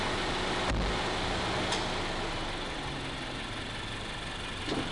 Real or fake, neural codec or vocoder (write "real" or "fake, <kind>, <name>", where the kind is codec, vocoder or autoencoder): real